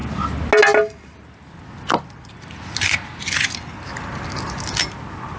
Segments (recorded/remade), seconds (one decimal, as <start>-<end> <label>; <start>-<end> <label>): 0.0-5.4 recorded